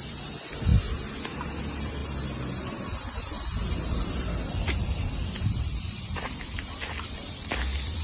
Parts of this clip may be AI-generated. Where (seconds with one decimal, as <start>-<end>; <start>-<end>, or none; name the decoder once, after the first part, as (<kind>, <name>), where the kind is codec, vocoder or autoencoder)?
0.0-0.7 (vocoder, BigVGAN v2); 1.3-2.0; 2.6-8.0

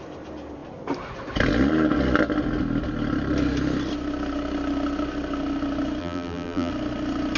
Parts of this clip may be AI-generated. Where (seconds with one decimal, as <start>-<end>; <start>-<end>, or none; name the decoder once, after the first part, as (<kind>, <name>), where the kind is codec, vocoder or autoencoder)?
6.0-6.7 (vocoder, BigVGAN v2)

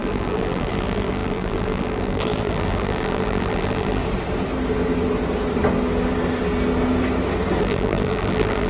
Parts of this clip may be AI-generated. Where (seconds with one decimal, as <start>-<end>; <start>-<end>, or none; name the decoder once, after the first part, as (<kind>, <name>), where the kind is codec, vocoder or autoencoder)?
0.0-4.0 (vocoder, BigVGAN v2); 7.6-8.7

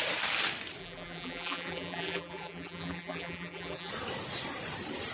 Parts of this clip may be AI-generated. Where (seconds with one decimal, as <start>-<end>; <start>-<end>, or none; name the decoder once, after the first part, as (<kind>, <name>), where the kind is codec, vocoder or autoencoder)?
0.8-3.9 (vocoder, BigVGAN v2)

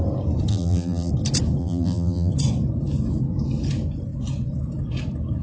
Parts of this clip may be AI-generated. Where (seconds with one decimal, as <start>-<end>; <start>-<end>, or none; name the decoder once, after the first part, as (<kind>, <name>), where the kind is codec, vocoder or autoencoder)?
0.5-1.1 (vocoder, BigVGAN v2); 1.6-2.3

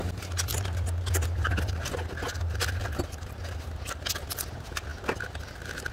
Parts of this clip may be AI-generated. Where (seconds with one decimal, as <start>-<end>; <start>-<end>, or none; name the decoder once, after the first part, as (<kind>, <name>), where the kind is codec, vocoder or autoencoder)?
none